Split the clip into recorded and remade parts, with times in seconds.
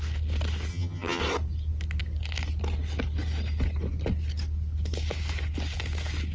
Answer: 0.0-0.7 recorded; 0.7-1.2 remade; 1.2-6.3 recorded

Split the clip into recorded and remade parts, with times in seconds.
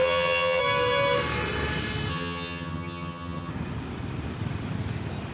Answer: 0.0-0.6 remade; 0.6-2.1 recorded; 2.1-3.5 remade; 3.5-5.3 recorded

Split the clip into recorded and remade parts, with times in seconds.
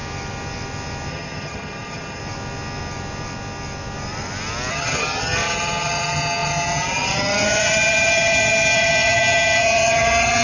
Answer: 0.0-1.1 recorded; 1.1-2.2 remade; 2.2-4.7 recorded; 4.7-10.4 remade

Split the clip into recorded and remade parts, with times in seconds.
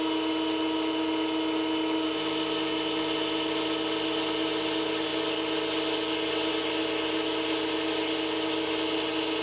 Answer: 0.0-9.4 recorded